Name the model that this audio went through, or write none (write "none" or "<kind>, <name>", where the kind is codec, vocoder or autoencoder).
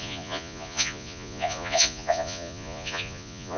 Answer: vocoder, Vocos